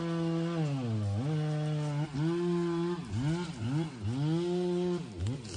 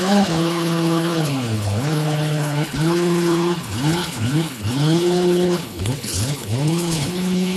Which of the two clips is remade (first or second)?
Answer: second